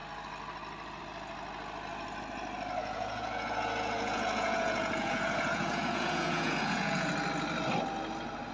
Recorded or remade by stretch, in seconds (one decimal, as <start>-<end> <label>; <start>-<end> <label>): 0.0-2.8 recorded; 2.8-7.1 remade; 7.1-8.5 recorded